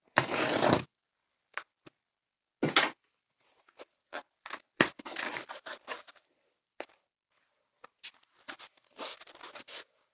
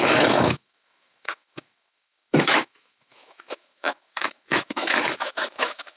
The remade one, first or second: second